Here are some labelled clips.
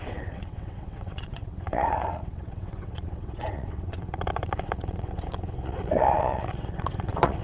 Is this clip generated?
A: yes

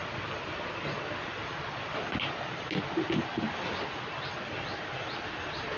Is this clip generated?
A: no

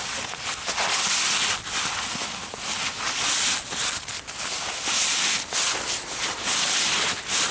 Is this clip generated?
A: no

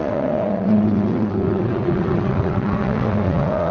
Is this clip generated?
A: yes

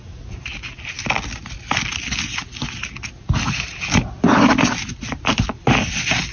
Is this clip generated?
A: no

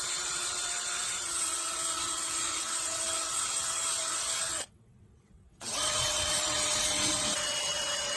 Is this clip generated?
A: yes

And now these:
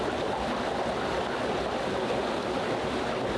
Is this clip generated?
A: no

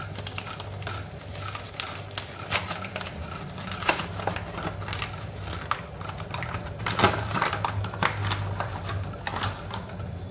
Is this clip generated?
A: no